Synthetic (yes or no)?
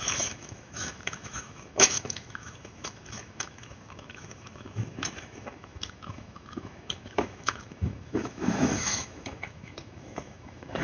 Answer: yes